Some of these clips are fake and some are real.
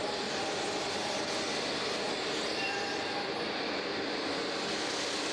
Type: fake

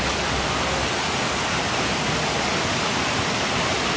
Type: real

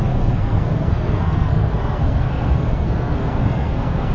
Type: fake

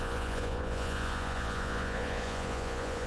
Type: fake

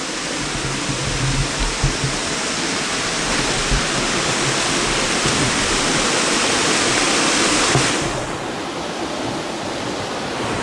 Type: real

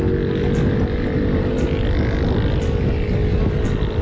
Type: real